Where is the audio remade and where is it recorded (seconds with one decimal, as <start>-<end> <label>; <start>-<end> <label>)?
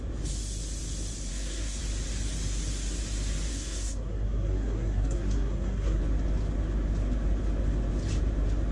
0.0-1.3 recorded; 1.3-1.8 remade; 1.8-3.5 recorded; 3.5-6.0 remade; 6.0-8.7 recorded